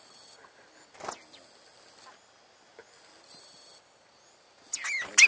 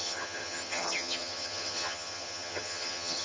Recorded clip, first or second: first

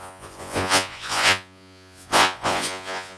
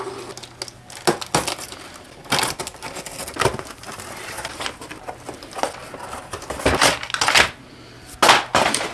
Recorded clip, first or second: second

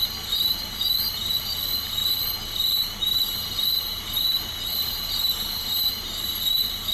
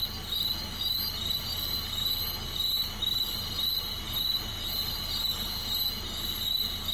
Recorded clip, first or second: second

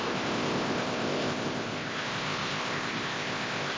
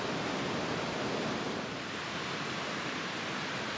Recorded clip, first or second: second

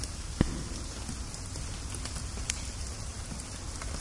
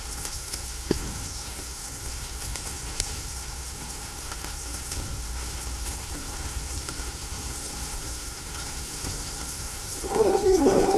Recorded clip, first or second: first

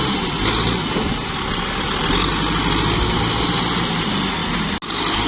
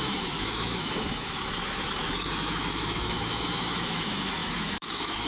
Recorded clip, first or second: first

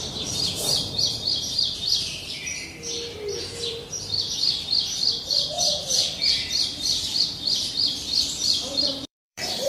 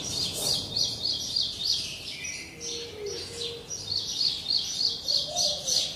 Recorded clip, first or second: second